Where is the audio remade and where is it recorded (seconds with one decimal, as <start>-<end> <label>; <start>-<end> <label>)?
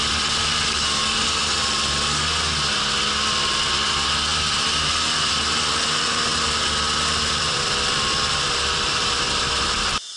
0.0-2.2 remade; 2.2-3.3 recorded; 3.3-10.2 remade